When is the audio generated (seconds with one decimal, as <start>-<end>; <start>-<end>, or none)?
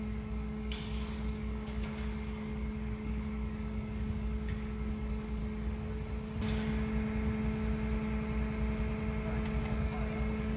0.0-5.4; 9.6-10.6